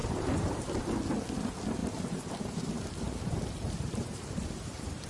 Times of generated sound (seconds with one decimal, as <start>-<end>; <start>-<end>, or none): 0.0-0.9; 1.8-5.1